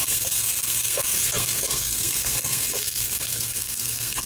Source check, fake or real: fake